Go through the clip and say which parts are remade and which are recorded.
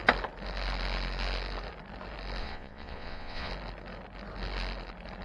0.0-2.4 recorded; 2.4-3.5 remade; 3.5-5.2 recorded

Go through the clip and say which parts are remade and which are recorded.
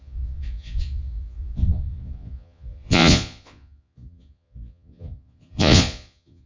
0.0-6.5 remade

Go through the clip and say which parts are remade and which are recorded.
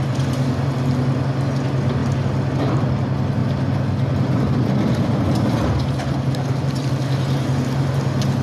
0.0-8.4 recorded